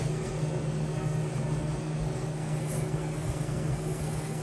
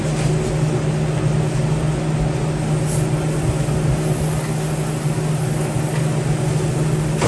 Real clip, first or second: second